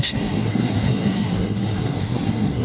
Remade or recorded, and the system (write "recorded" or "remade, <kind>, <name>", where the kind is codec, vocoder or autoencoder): remade, codec, SNAC